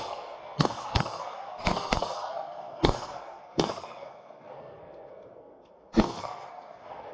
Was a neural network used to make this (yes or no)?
yes